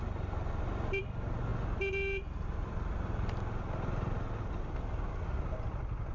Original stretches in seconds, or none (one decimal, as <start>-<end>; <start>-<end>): 0.0-6.1